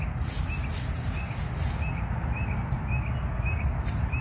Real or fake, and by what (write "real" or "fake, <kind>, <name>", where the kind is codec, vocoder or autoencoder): real